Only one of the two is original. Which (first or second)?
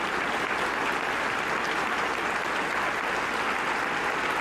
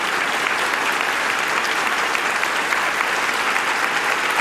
first